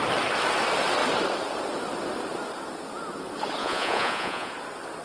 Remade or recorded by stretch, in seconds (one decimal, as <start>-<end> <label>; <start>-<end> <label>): 0.0-3.6 recorded; 3.6-4.5 remade; 4.5-5.0 recorded